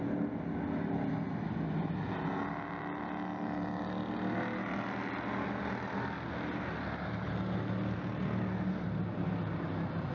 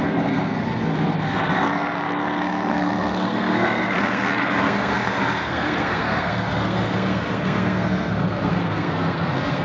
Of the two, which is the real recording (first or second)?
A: first